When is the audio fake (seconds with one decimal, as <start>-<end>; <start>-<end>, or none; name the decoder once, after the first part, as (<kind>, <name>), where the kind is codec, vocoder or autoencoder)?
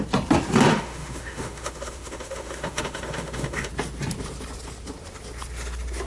0.7-3.7 (autoencoder, DAC-VAE)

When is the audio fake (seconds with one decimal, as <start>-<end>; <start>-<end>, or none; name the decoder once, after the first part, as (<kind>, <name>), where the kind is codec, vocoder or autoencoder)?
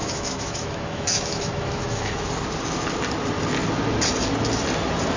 0.0-2.3 (autoencoder, DAC-VAE)